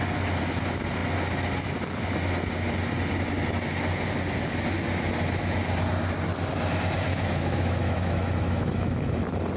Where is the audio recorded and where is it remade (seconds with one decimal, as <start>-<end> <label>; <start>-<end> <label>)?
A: 0.0-7.1 recorded; 7.1-9.1 remade; 9.1-9.6 recorded